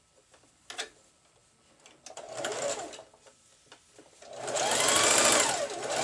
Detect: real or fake real